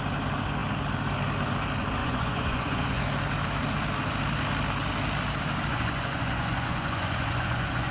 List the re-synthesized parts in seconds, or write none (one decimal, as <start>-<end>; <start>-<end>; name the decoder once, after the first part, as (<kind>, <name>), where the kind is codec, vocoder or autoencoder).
2.0-3.0 (vocoder, Vocos); 5.7-7.9

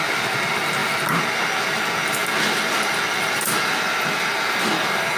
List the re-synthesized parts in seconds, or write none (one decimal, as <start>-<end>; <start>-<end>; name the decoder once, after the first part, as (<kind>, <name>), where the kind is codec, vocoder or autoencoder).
none